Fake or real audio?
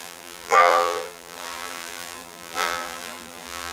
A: fake